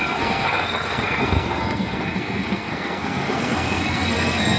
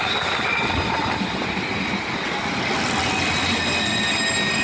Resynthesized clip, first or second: first